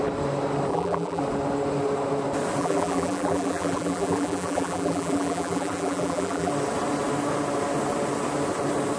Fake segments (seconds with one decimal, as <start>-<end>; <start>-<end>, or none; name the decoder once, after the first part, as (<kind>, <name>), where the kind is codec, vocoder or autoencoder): 0.7-1.2 (vocoder, BigVGAN v2); 2.6-6.5